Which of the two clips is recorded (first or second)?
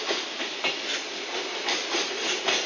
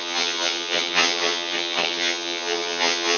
first